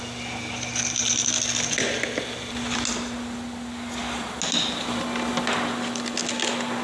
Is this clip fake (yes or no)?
no